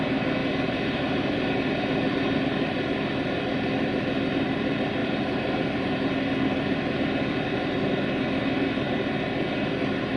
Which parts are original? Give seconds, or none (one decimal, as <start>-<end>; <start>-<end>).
0.0-0.4; 1.8-5.0; 6.1-10.2

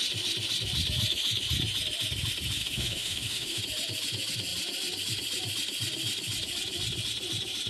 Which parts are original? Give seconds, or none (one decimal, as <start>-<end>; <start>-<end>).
0.0-2.6; 3.6-7.7

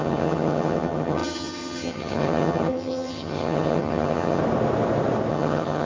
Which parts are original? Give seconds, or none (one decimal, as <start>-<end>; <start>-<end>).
4.4-5.3

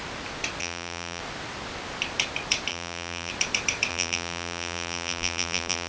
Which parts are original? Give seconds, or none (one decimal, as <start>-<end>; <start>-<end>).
0.0-0.6; 1.2-2.7; 3.3-3.9

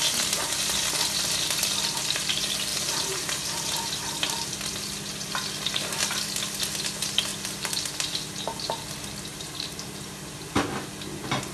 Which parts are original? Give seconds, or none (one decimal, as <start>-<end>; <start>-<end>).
0.0-2.7; 3.8-9.3; 10.2-11.5

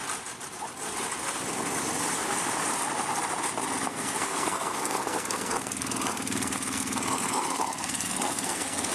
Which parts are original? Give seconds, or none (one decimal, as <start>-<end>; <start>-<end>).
0.0-3.9

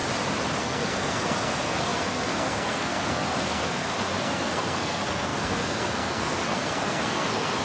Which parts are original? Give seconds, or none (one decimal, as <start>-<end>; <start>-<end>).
0.0-0.6